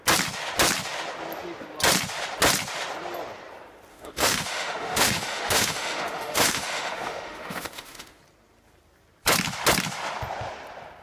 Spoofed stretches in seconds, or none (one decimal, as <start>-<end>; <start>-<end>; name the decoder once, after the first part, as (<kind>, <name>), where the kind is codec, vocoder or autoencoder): 3.9-8.2 (autoencoder, DAC-VAE)